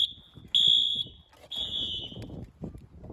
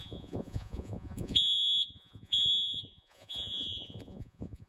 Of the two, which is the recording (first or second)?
first